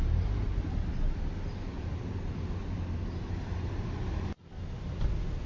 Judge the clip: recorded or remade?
recorded